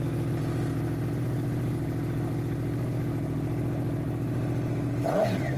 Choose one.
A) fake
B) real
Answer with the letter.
B